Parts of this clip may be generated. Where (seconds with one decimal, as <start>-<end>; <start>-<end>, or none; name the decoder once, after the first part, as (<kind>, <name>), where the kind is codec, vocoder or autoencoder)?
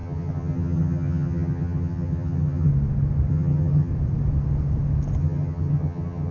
0.0-2.7 (vocoder, HiFi-GAN); 3.3-3.9; 5.2-6.3